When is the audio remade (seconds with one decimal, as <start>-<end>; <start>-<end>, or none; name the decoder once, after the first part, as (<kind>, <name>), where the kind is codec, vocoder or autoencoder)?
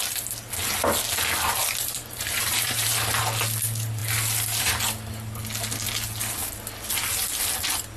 1.6-3.2 (vocoder, BigVGAN v2)